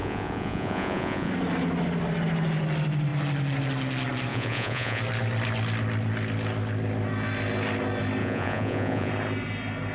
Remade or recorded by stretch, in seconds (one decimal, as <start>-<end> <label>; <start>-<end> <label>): 0.0-1.3 remade; 1.3-4.3 recorded; 4.3-5.0 remade; 5.0-8.2 recorded; 8.2-9.1 remade; 9.1-9.9 recorded